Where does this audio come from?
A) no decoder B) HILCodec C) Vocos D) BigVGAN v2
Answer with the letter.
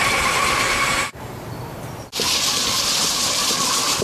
D